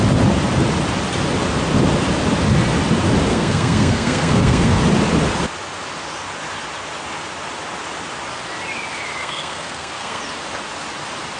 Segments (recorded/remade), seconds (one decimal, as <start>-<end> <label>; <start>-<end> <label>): 0.0-3.3 recorded; 3.3-4.8 remade; 4.8-9.2 recorded; 9.2-10.2 remade; 10.2-11.4 recorded